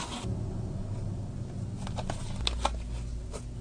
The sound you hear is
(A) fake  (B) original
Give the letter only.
B